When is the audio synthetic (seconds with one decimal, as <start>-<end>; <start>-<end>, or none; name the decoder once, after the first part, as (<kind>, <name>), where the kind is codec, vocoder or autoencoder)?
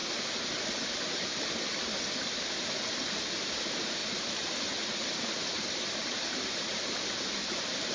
2.1-4.0 (vocoder, BigVGAN v2); 5.4-7.9